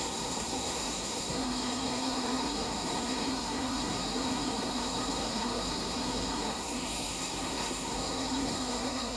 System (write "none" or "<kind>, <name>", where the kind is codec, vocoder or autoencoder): codec, SNAC